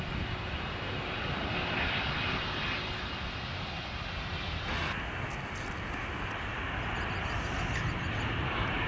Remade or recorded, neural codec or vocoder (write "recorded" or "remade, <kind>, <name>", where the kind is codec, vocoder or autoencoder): recorded